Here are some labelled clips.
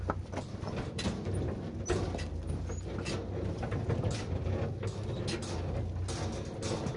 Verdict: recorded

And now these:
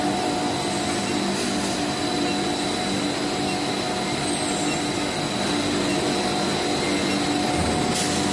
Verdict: recorded